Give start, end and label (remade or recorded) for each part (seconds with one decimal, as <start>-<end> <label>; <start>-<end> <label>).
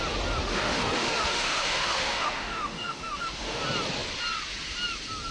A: 0.0-0.4 recorded; 0.4-3.6 remade; 3.6-5.3 recorded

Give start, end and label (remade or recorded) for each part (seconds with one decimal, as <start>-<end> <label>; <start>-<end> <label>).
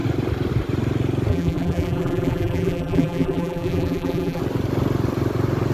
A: 0.0-1.3 recorded; 1.3-4.4 remade; 4.4-5.7 recorded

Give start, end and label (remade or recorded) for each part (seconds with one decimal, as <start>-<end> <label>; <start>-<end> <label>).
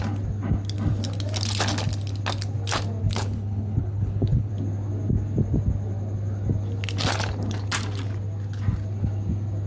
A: 0.0-3.0 recorded; 3.0-4.5 remade; 4.5-9.7 recorded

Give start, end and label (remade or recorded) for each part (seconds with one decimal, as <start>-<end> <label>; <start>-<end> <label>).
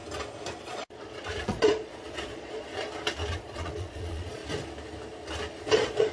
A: 0.0-0.6 recorded; 0.6-2.7 remade; 2.7-3.3 recorded; 3.3-4.4 remade; 4.4-5.6 recorded; 5.6-6.1 remade